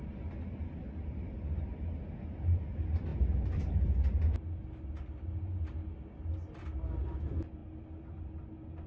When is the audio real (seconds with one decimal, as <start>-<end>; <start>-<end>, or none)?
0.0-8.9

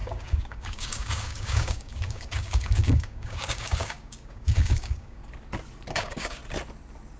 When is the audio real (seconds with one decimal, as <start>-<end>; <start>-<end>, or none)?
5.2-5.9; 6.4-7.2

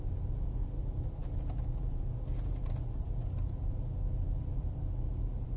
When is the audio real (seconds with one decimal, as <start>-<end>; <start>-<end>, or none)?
0.0-5.6

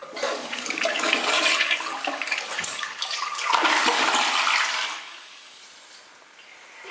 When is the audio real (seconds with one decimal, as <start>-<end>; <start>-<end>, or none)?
4.1-4.9; 5.6-6.9

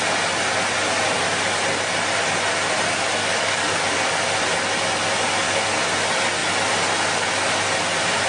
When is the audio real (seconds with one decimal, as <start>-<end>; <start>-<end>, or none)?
0.0-3.2; 3.8-8.3